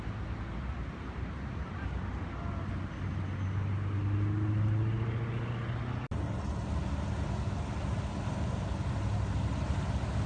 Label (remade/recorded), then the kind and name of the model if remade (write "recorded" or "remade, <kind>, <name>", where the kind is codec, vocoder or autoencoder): recorded